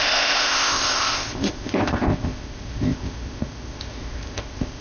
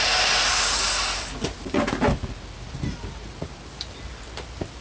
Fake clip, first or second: first